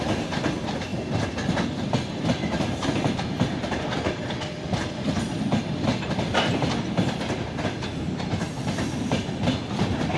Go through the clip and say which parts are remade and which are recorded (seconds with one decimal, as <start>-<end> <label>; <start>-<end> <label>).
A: 0.0-7.9 recorded; 7.9-8.5 remade; 8.5-10.2 recorded